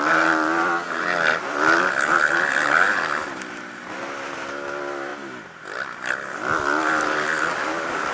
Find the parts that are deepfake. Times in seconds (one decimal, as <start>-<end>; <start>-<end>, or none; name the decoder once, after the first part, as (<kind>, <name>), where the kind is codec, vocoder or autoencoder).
none